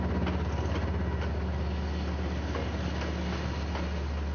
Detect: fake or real real